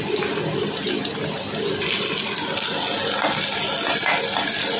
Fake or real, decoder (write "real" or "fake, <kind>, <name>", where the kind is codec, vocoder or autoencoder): real